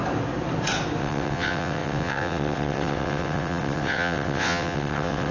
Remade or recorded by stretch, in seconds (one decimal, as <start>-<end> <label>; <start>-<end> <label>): 0.0-1.0 recorded; 1.0-5.3 remade